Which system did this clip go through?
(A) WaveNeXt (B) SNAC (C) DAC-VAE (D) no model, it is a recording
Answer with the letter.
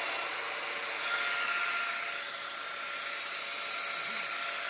D